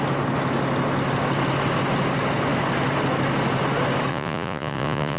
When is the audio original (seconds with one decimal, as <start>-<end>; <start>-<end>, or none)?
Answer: 0.0-4.1

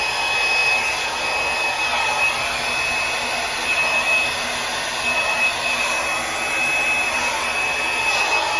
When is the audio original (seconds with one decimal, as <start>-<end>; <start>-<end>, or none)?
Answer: 0.0-8.6

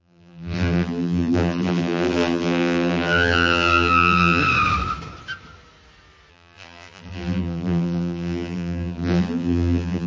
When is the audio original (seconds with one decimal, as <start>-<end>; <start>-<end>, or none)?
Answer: 4.4-6.3

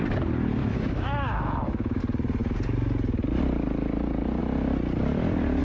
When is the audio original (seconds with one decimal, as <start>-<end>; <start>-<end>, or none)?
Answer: 0.0-0.6; 2.0-5.6

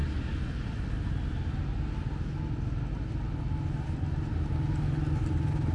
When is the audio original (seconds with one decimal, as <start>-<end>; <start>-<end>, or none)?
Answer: 0.0-5.7

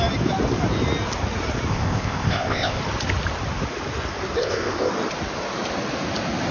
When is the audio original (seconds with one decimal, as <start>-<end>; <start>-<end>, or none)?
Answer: 0.0-1.7; 2.8-4.4; 4.9-6.5

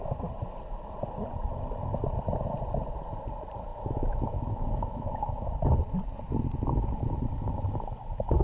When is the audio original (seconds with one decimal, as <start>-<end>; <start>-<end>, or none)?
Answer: 0.0-3.7; 5.5-8.4

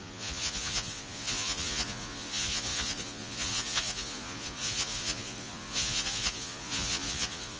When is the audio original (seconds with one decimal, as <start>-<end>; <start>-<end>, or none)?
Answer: none